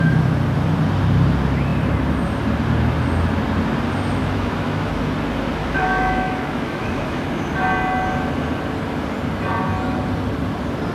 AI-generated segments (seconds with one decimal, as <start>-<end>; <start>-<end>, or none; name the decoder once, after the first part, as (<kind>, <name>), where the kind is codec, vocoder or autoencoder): 4.2-5.0 (autoencoder, DAC-VAE); 5.6-7.3